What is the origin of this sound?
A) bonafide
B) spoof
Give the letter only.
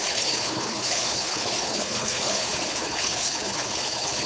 B